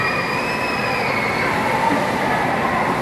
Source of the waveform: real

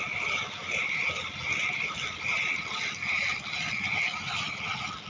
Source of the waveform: real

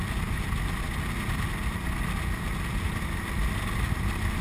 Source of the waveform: real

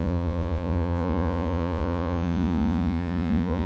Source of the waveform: fake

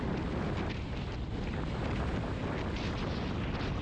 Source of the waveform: real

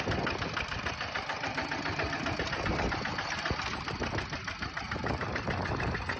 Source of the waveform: real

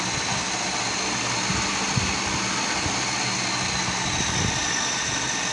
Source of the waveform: real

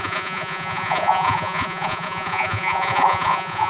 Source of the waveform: fake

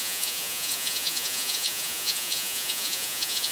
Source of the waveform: fake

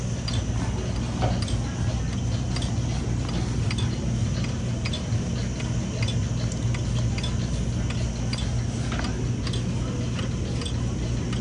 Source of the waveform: real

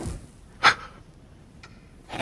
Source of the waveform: real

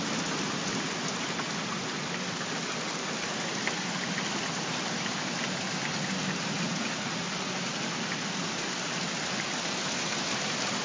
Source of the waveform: real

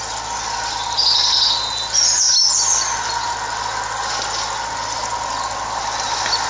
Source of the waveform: real